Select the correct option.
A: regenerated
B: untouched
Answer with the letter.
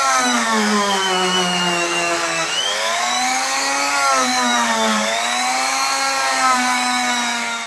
A